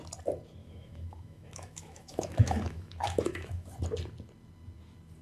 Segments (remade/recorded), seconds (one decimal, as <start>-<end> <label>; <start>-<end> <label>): 0.0-0.6 recorded; 0.6-3.7 remade; 3.7-5.2 recorded